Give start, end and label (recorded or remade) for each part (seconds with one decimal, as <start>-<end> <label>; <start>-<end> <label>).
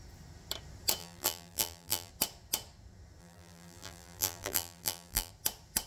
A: 0.0-1.0 recorded; 1.0-2.1 remade; 2.1-3.2 recorded; 3.2-5.3 remade; 5.3-5.9 recorded